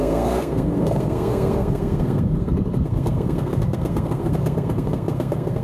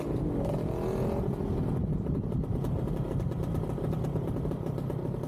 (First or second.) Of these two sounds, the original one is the second